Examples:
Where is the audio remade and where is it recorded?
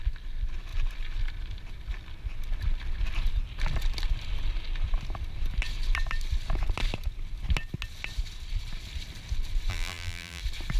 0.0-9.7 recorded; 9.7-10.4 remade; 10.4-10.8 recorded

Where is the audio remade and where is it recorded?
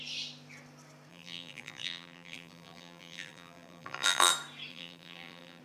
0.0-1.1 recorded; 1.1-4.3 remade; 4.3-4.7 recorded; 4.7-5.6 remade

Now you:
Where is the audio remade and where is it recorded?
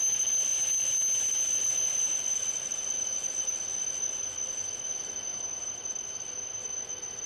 0.0-0.5 recorded; 0.5-1.5 remade; 1.5-5.3 recorded; 5.3-6.6 remade; 6.6-7.3 recorded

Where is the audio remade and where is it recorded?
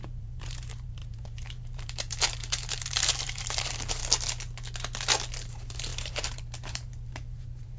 0.0-4.0 remade; 4.0-5.5 recorded; 5.5-7.8 remade